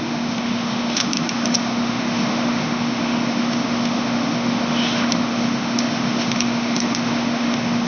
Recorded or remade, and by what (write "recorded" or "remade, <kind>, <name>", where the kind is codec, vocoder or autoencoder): remade, autoencoder, DAC-VAE